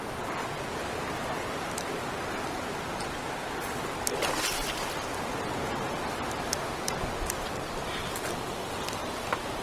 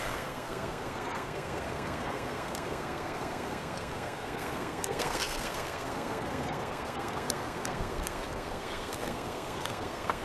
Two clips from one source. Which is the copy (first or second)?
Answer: second